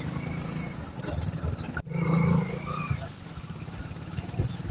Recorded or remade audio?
recorded